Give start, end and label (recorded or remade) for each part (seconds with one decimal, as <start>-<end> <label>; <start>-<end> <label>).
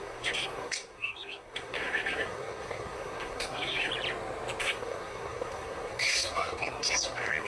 0.0-3.9 remade; 3.9-4.6 recorded; 4.6-7.5 remade